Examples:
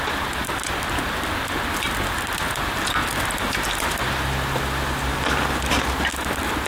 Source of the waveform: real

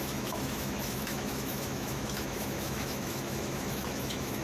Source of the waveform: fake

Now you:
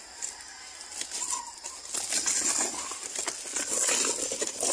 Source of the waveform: real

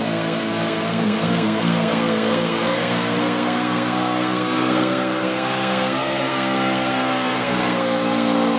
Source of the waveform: fake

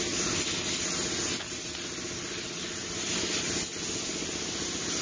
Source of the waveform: real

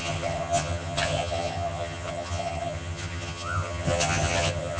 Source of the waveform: fake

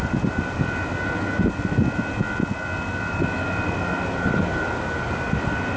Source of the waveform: real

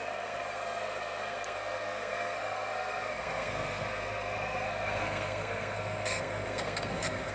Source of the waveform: fake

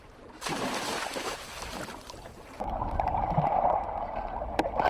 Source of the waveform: fake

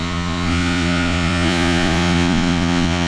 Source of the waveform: fake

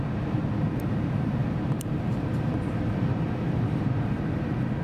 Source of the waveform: fake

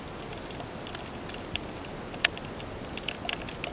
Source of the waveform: real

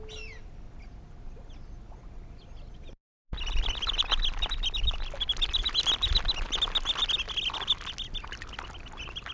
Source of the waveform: real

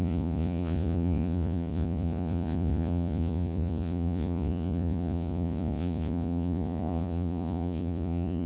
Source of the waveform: fake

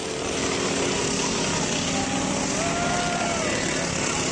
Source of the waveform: real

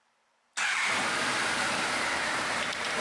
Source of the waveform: fake